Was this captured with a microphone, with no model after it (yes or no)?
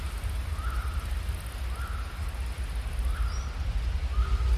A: yes